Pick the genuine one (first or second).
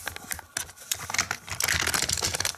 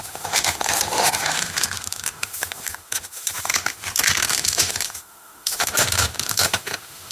first